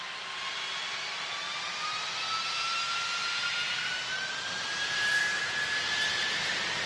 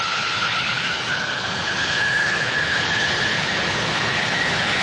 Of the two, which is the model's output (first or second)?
second